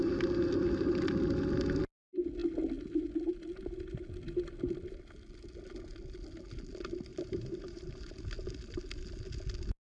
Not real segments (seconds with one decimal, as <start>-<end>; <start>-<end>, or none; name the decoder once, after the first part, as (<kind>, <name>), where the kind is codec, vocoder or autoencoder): 7.1-8.2 (vocoder, BigVGAN v2)